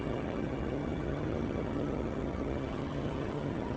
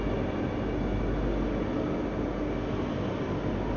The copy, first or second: first